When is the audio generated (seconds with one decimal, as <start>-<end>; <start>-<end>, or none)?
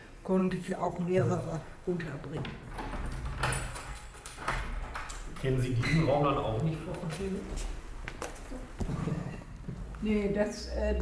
0.4-2.0; 3.7-4.6; 6.8-7.4